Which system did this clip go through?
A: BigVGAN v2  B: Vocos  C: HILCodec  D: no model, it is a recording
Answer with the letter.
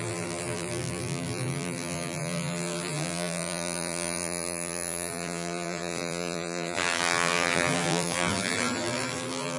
A